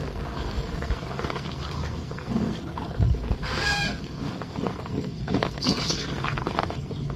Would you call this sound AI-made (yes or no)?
yes